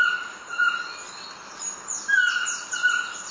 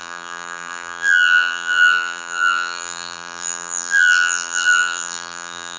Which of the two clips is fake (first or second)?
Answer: second